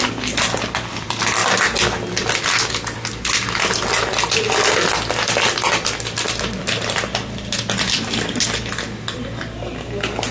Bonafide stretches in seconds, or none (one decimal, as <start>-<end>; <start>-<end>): 0.0-10.3